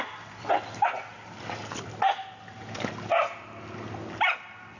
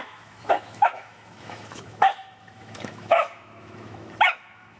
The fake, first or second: second